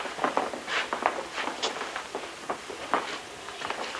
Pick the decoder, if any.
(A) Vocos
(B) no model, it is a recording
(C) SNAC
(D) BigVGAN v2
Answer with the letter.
B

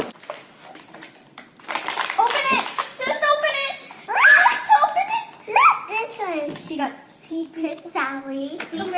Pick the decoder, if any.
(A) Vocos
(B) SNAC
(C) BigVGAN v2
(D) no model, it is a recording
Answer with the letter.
C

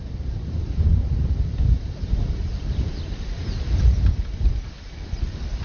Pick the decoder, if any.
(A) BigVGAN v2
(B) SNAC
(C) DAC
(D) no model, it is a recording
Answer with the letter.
A